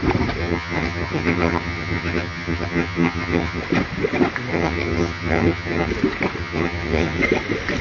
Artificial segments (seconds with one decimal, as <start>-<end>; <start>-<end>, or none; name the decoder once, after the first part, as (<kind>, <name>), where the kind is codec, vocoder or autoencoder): 0.4-3.6 (vocoder, HiFi-GAN); 4.5-5.9; 6.4-7.2